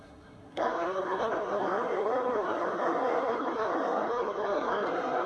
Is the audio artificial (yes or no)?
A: yes